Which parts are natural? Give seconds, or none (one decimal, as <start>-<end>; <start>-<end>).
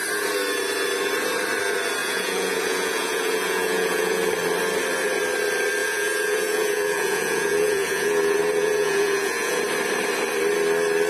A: 0.0-2.0; 4.3-5.8; 9.6-11.1